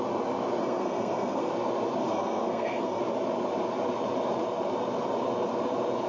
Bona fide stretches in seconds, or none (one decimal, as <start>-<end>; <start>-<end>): 0.0-0.6; 1.5-2.0; 3.0-6.1